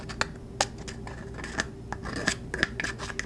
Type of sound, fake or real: real